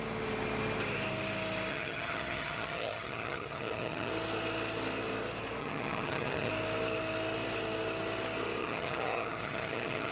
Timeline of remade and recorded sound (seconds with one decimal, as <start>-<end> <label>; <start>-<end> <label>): 0.0-1.7 recorded; 1.7-4.1 remade; 4.1-5.6 recorded; 5.6-6.5 remade; 6.5-8.6 recorded; 8.6-10.1 remade